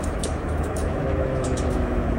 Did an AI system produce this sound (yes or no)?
yes